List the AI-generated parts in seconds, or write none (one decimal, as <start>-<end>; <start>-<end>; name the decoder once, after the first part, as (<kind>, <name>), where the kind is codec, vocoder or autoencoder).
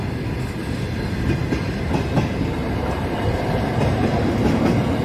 2.6-4.6 (vocoder, BigVGAN v2)